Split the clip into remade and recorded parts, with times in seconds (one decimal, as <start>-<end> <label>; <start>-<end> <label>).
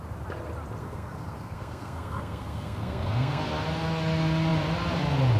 0.0-0.8 recorded; 0.8-3.4 remade; 3.4-5.4 recorded